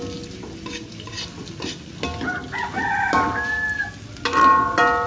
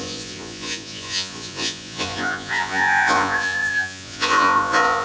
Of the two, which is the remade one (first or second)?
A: second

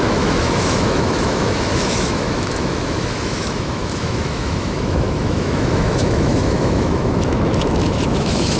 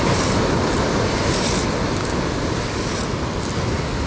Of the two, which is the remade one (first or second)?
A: first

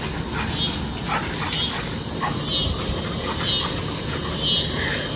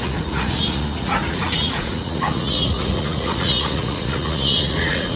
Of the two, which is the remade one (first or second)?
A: second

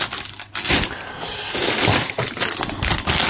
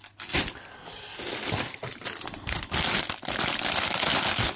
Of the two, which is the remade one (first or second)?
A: second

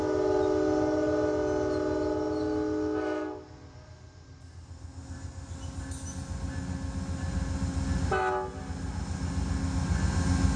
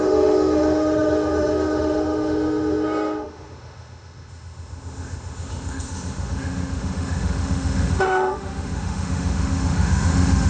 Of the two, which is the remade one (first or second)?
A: second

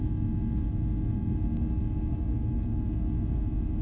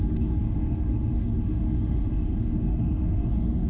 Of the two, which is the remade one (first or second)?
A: second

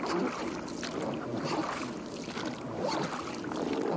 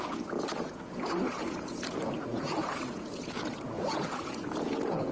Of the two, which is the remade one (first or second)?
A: second